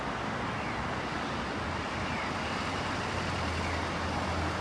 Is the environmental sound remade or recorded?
recorded